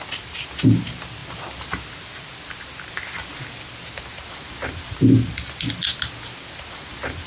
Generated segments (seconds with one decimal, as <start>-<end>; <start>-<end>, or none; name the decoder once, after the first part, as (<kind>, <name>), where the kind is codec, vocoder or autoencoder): none